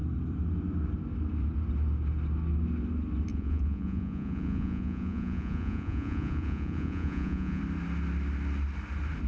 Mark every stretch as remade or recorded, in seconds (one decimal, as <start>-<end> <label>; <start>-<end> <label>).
0.0-3.3 recorded; 3.3-7.6 remade; 7.6-9.3 recorded